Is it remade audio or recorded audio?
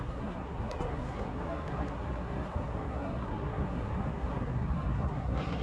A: remade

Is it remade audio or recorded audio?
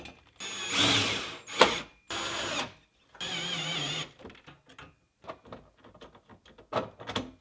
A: recorded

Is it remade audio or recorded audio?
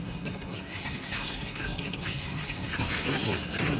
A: remade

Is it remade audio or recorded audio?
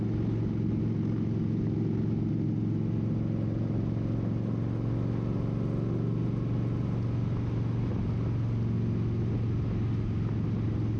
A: recorded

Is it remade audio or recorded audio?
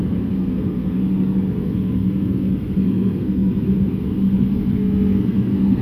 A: remade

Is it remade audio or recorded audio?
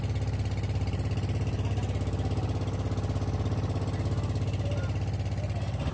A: recorded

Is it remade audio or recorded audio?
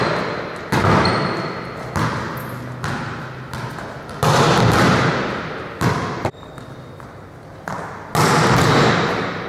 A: recorded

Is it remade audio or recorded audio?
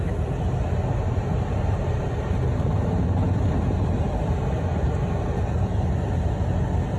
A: recorded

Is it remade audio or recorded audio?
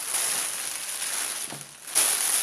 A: recorded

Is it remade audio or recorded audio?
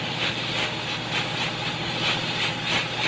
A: recorded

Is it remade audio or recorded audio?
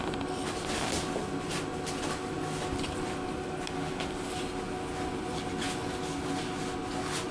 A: recorded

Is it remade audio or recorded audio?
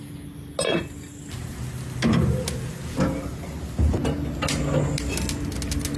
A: recorded